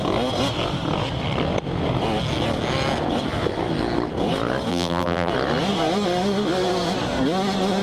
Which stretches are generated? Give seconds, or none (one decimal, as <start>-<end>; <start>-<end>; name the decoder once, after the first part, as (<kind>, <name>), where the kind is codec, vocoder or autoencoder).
4.7-5.3 (vocoder, BigVGAN v2)

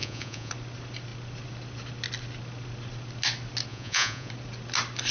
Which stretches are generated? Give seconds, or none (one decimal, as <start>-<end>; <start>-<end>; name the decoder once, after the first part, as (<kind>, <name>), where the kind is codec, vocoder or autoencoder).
0.0-0.5 (vocoder, Vocos); 3.7-4.3